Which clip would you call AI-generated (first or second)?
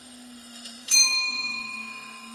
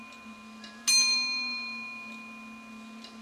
first